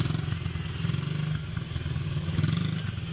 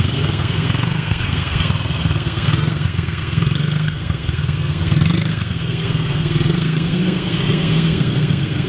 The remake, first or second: second